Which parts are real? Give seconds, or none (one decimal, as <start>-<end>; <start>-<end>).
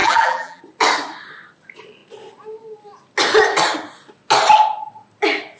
0.6-5.6